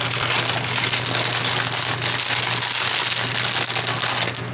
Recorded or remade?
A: recorded